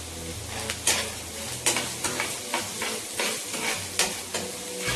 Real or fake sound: real